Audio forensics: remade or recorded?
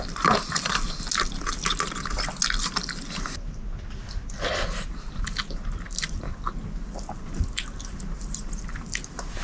recorded